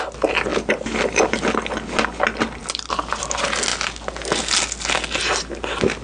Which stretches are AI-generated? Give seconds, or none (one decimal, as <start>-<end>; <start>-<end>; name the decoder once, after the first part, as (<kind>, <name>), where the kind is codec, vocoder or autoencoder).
0.5-1.4 (vocoder, BigVGAN v2); 2.6-3.2; 3.7-4.5